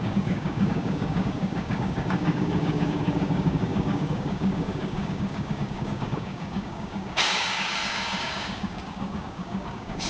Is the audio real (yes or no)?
no